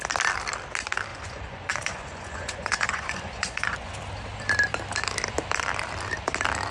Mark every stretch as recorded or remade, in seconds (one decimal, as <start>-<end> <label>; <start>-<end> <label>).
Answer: 0.0-1.1 recorded; 1.1-3.9 remade; 3.9-6.7 recorded